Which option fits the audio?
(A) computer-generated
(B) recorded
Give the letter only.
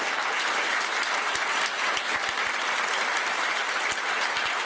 B